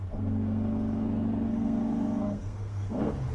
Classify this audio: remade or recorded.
remade